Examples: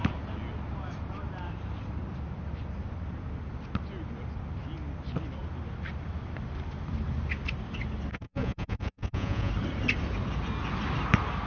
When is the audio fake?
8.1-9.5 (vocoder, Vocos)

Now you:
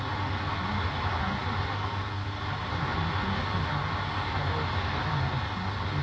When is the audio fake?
none

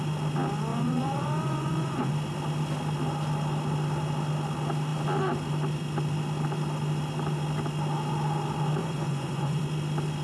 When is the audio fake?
0.7-2.1 (vocoder, Vocos); 8.8-9.6